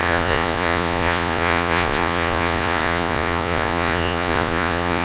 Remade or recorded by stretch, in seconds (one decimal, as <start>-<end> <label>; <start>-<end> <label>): 0.0-5.0 remade